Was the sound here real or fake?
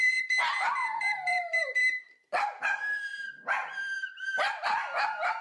fake